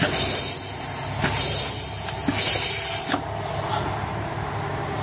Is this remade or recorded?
recorded